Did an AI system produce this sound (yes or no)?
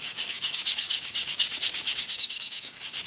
yes